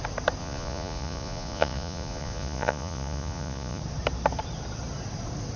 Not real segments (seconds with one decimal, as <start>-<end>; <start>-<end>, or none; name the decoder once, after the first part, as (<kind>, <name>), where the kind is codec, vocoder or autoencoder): 0.4-3.8 (vocoder, Vocos)